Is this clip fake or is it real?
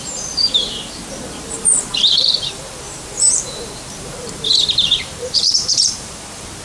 fake